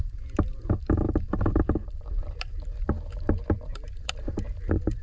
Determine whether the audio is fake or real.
fake